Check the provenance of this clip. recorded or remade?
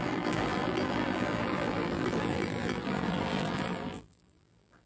remade